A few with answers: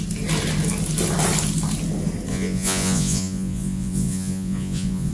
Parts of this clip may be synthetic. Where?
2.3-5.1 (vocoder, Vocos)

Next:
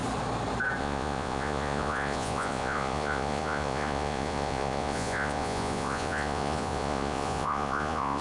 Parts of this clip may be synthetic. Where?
0.8-8.2 (vocoder, Vocos)

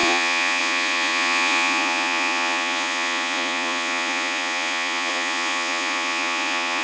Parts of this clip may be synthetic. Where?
0.0-6.8 (vocoder, Vocos)

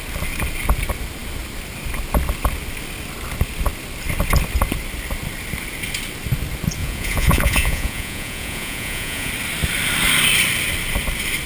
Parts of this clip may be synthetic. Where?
6.8-9.3 (vocoder, Vocos)

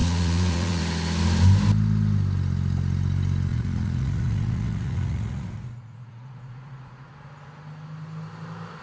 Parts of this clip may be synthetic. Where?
0.0-0.8 (vocoder, Vocos); 3.5-7.1

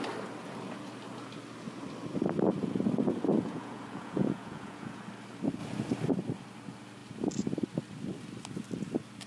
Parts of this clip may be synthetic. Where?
3.4-5.0 (vocoder, Vocos)